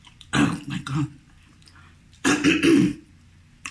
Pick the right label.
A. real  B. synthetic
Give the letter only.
B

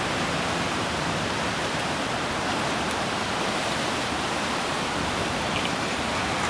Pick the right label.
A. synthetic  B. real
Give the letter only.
A